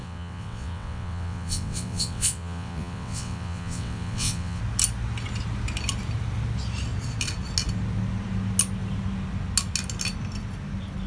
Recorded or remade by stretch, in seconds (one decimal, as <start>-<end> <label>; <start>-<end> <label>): 0.0-4.6 remade; 4.6-11.1 recorded